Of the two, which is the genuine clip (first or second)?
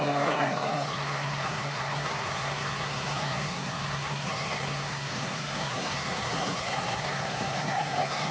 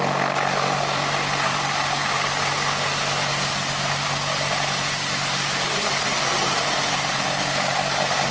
second